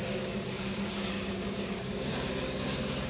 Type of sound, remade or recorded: remade